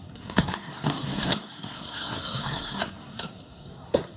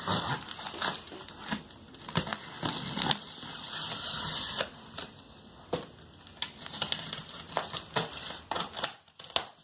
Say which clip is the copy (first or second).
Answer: first